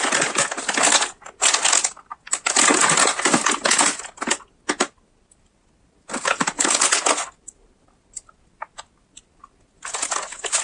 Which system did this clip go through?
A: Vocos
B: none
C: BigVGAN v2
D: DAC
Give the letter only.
B